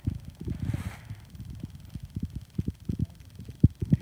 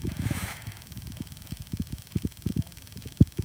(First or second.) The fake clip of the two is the second